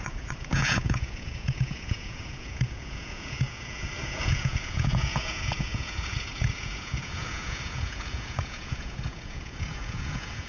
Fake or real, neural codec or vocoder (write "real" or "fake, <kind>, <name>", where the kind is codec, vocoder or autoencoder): fake, vocoder, Vocos